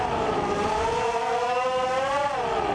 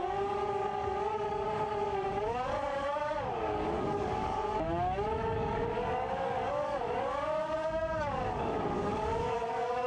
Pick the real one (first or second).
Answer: first